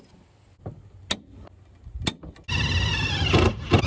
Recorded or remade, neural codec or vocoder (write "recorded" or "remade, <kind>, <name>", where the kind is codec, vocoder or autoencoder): recorded